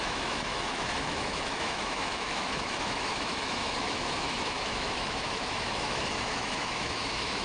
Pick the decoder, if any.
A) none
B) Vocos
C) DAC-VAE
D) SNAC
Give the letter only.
C